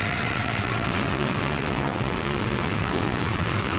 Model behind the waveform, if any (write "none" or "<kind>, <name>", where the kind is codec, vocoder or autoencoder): vocoder, WaveNeXt